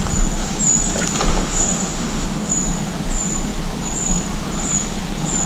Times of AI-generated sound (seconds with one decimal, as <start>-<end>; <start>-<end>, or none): 1.3-2.5